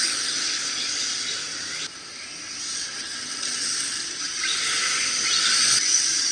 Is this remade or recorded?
recorded